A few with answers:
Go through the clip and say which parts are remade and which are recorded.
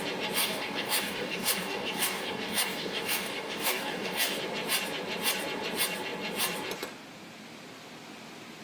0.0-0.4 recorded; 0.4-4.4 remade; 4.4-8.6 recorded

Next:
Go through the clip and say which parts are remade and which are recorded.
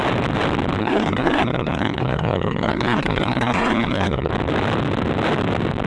0.0-0.8 recorded; 0.8-4.3 remade; 4.3-5.9 recorded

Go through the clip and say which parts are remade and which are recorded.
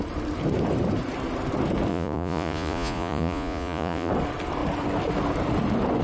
0.0-1.9 recorded; 1.9-4.1 remade; 4.1-6.0 recorded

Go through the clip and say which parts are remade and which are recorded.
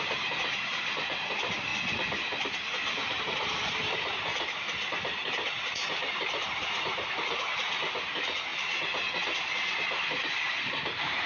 0.0-1.7 remade; 1.7-3.2 recorded; 3.2-4.3 remade; 4.3-6.2 recorded; 6.2-8.5 remade; 8.5-10.3 recorded; 10.3-11.3 remade